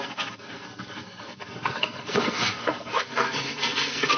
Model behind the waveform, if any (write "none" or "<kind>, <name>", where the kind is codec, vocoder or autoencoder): codec, SNAC